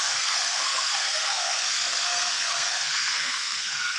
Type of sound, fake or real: fake